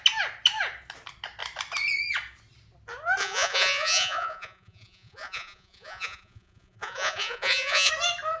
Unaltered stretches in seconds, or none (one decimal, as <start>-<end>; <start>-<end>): 0.0-3.2; 7.9-8.4